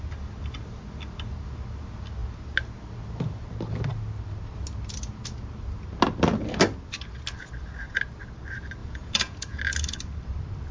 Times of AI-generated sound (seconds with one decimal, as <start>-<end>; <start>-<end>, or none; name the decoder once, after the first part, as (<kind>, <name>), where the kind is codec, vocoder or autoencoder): 8.8-9.6 (vocoder, Vocos)